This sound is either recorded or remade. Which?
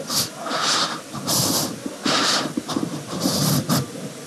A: recorded